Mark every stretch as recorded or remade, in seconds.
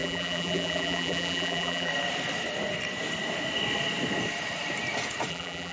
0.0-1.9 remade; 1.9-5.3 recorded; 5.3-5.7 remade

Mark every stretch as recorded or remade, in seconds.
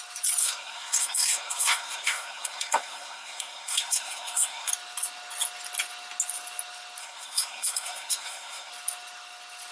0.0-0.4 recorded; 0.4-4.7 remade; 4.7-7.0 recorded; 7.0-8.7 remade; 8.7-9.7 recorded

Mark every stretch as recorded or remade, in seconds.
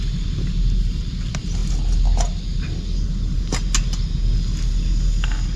0.0-5.6 recorded